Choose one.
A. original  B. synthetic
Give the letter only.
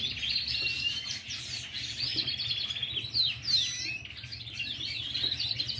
A